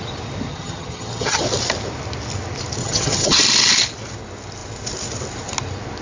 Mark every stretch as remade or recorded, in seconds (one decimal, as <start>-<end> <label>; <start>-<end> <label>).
0.0-0.5 recorded; 0.5-1.4 remade; 1.4-2.8 recorded; 2.8-3.4 remade; 3.4-6.0 recorded